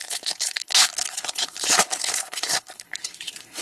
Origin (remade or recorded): remade